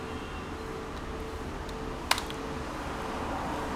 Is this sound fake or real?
real